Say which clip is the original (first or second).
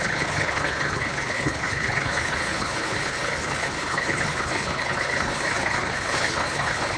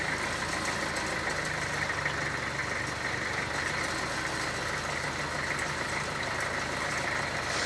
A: second